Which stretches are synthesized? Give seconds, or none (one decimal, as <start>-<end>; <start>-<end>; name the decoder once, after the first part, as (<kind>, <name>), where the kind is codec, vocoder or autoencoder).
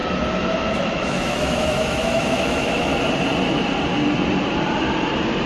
0.7-2.9 (autoencoder, DAC-VAE)